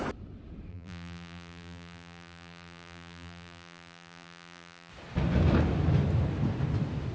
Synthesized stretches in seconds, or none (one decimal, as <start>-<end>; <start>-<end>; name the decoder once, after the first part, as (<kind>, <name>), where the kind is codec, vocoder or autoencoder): 0.7-4.9 (vocoder, BigVGAN v2)